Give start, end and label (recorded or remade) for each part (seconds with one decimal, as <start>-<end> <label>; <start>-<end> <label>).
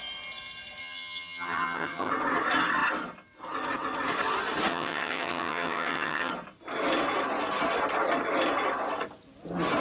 0.0-0.8 recorded; 0.8-2.1 remade; 2.1-4.7 recorded; 4.7-6.3 remade; 6.3-9.8 recorded